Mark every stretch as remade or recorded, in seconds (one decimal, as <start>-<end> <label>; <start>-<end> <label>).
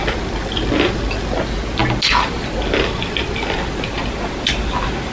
0.0-5.1 recorded